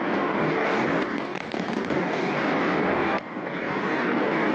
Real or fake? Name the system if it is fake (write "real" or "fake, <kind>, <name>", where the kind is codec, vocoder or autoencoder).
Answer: fake, codec, DAC